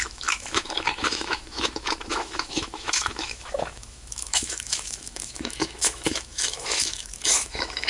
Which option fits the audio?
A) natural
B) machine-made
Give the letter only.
B